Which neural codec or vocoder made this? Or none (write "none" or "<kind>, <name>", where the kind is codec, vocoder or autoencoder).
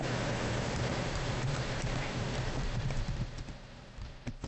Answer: vocoder, BigVGAN v2